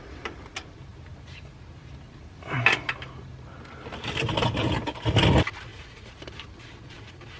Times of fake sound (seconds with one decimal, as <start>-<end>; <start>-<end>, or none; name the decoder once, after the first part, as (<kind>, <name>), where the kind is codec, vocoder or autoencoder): 5.7-6.2 (vocoder, Vocos)